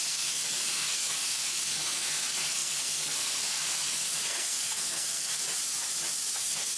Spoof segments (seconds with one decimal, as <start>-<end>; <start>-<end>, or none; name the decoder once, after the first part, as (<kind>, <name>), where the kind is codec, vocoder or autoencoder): 0.0-5.4 (codec, SNAC); 6.3-6.8